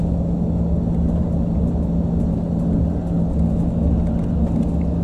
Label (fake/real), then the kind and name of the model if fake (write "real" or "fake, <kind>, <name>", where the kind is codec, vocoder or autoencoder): real